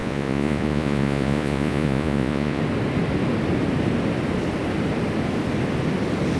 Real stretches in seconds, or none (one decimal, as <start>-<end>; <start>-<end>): 2.6-6.4